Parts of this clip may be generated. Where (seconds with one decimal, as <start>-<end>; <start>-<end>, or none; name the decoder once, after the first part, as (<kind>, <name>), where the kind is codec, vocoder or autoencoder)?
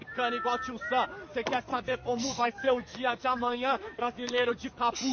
1.7-4.5 (codec, SNAC)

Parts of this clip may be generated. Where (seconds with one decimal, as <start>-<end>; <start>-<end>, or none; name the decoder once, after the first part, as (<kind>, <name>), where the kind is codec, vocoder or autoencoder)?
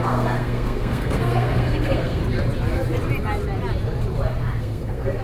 0.0-2.2 (codec, SNAC); 4.6-5.2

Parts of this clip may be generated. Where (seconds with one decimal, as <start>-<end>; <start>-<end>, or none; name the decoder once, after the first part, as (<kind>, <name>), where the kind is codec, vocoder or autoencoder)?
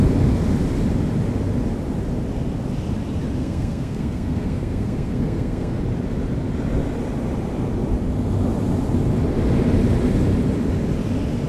3.4-5.8 (codec, SNAC)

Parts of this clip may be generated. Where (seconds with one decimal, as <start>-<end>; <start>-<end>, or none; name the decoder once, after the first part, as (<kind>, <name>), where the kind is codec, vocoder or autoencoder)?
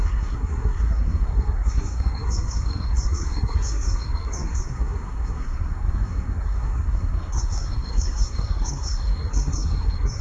0.0-10.2 (codec, SNAC)